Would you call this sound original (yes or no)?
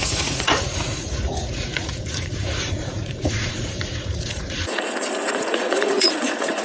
no